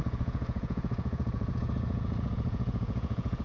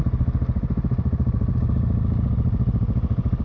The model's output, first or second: first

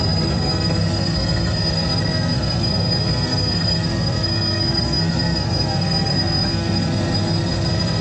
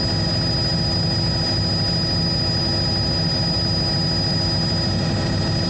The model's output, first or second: first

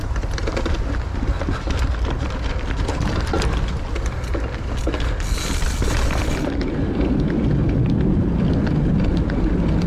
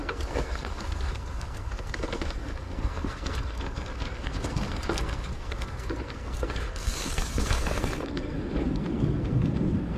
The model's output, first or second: second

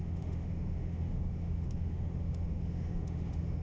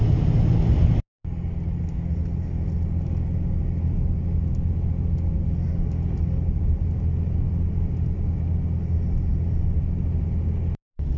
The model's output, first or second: first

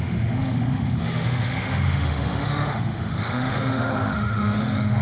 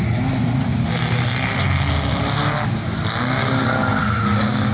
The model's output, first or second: first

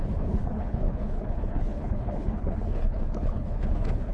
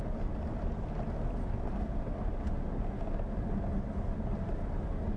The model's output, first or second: first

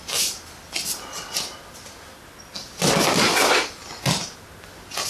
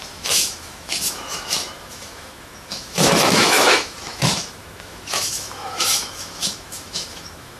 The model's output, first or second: second